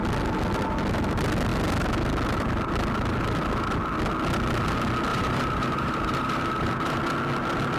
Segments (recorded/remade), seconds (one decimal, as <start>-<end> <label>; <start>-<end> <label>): 0.0-5.1 recorded; 5.1-7.0 remade; 7.0-7.8 recorded